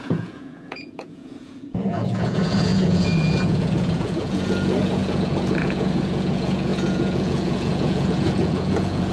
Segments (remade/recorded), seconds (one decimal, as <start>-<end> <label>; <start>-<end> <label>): 0.0-9.1 remade